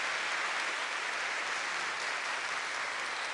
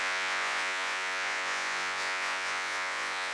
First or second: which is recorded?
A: first